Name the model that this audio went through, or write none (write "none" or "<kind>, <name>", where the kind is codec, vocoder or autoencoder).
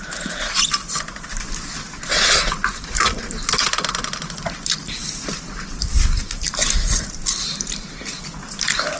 none